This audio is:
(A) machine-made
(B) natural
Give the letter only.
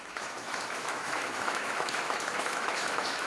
A